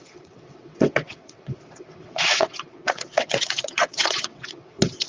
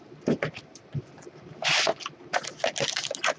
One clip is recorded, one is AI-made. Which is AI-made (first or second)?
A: first